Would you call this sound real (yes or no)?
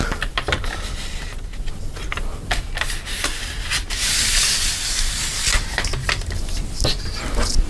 yes